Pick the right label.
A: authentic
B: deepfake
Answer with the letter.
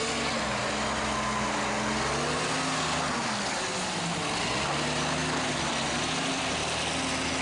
A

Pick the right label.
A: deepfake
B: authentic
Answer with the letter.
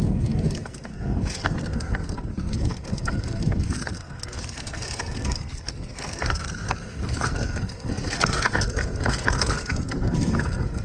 A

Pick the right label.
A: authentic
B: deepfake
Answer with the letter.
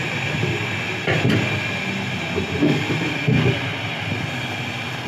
A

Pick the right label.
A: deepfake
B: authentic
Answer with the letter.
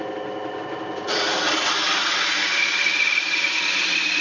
B